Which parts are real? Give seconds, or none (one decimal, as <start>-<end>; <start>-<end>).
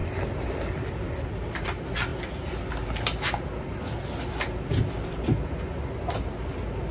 0.0-6.9